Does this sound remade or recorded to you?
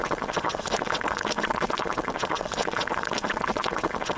remade